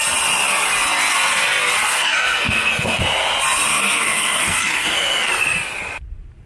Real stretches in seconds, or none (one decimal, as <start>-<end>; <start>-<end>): 0.0-1.9; 3.0-3.7; 5.3-6.5